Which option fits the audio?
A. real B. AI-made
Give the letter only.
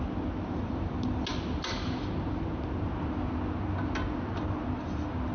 A